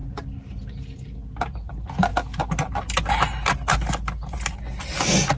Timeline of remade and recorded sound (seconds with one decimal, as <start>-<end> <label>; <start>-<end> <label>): 0.0-5.4 recorded